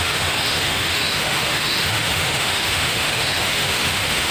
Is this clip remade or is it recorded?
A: remade